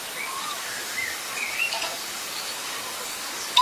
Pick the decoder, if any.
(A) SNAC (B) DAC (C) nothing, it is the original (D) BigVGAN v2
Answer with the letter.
B